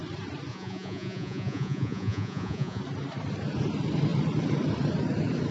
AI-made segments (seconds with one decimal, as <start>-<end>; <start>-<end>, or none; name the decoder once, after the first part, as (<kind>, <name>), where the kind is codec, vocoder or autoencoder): 0.5-2.8 (vocoder, Vocos)